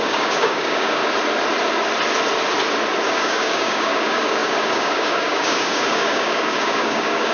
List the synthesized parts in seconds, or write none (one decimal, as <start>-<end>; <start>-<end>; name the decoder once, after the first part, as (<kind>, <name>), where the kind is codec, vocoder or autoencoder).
0.0-1.0 (codec, DAC); 3.1-7.3